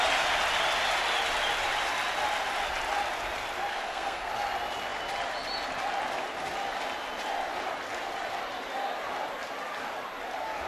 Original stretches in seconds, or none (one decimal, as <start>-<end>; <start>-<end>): 0.0-3.7; 4.3-10.7